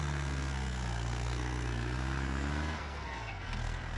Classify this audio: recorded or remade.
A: remade